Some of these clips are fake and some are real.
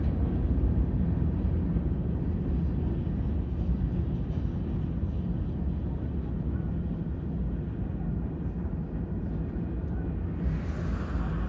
real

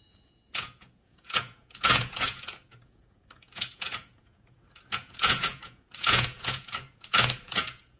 fake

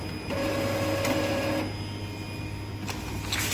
real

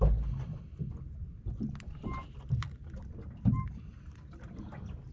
real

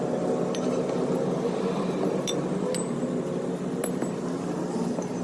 real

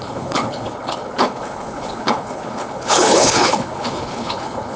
fake